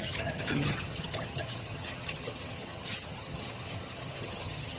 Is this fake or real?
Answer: fake